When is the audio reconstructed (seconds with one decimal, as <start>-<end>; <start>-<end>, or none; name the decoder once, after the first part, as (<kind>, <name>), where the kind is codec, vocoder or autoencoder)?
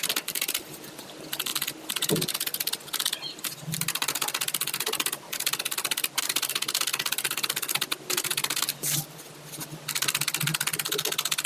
none